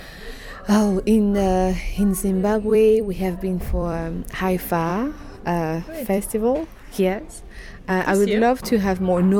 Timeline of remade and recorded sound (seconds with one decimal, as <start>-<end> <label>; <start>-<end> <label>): 0.0-2.7 recorded; 2.7-4.4 remade; 4.4-4.9 recorded; 4.9-7.9 remade; 7.9-9.4 recorded